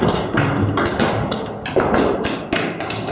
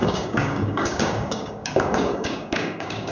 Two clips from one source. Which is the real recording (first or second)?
first